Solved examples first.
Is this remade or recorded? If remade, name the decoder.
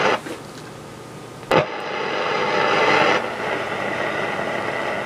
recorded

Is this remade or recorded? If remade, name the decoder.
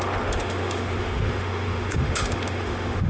remade, autoencoder, DAC-VAE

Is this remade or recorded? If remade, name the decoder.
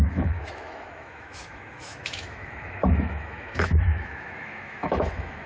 remade, autoencoder, DAC-VAE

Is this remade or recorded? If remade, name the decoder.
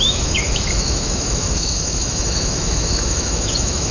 remade, autoencoder, DAC-VAE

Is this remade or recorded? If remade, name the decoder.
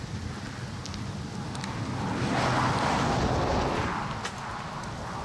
recorded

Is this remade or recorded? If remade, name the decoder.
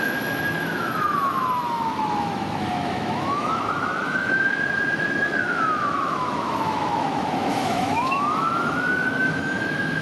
remade, autoencoder, DAC-VAE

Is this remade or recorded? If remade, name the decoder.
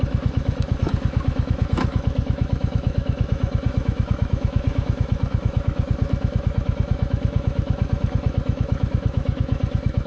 remade, autoencoder, DAC-VAE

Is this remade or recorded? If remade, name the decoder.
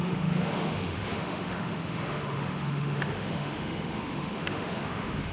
remade, autoencoder, DAC-VAE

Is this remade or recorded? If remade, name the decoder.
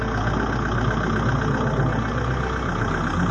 recorded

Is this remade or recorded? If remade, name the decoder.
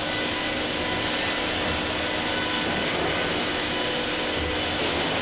recorded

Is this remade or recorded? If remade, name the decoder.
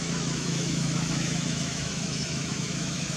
remade, autoencoder, DAC-VAE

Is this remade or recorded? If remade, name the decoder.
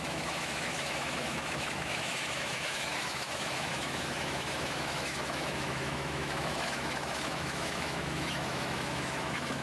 remade, autoencoder, DAC-VAE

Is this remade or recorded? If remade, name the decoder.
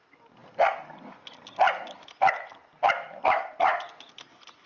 recorded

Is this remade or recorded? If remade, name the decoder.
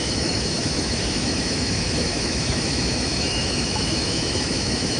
remade, autoencoder, DAC-VAE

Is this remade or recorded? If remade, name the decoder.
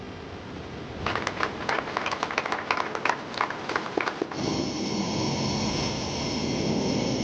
recorded